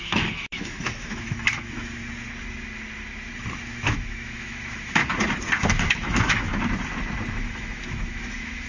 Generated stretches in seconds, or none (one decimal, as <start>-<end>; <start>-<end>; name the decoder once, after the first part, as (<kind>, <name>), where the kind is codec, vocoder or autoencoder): 0.0-2.0 (autoencoder, DAC-VAE); 3.7-5.0; 5.8-6.5; 7.3-8.7